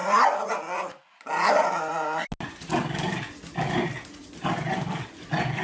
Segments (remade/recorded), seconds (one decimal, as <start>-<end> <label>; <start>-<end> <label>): 0.0-5.6 recorded